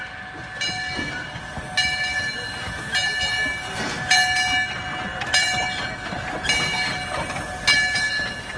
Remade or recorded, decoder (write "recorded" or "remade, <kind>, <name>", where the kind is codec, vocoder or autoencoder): recorded